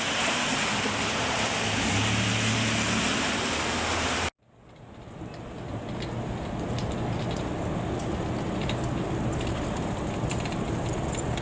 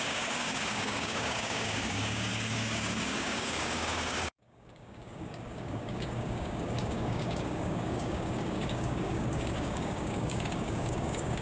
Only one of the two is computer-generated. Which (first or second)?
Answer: second